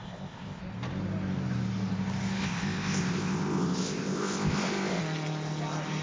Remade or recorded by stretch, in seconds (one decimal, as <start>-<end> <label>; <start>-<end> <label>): 0.0-0.6 remade; 0.6-2.4 recorded; 2.4-5.0 remade; 5.0-6.0 recorded